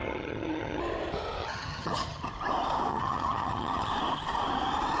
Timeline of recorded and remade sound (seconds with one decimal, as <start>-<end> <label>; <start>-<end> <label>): 0.0-0.8 remade; 0.8-1.4 recorded; 1.4-2.3 remade; 2.3-2.9 recorded; 2.9-3.9 remade; 3.9-5.0 recorded